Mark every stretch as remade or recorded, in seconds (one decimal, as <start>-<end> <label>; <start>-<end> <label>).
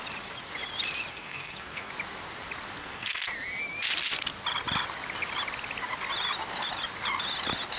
0.0-1.1 recorded; 1.1-1.9 remade; 1.9-2.8 recorded; 2.8-3.3 remade; 3.3-7.8 recorded